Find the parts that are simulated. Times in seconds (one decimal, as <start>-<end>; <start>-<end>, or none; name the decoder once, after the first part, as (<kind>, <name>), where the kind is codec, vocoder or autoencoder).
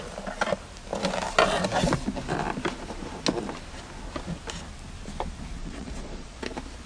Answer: 5.6-6.4 (vocoder, Vocos)